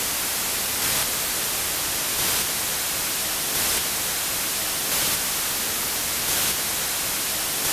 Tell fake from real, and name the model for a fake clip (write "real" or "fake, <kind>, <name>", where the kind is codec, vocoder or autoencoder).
real